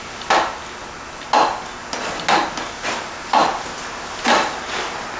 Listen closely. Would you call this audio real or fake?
real